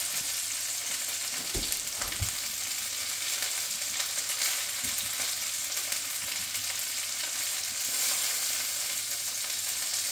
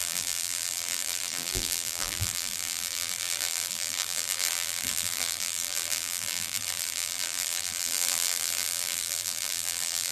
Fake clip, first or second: second